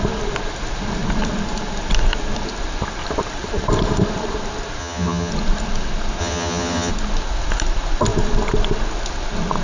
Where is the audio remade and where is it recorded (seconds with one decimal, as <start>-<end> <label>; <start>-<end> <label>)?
0.0-4.8 recorded; 4.8-5.3 remade; 5.3-6.2 recorded; 6.2-6.9 remade; 6.9-9.6 recorded